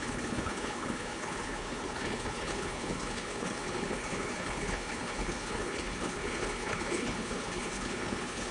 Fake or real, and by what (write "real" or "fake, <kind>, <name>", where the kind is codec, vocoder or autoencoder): fake, codec, HILCodec